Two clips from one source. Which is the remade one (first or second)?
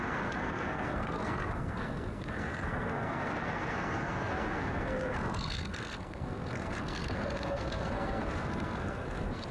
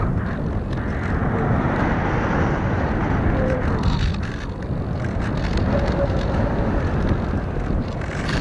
first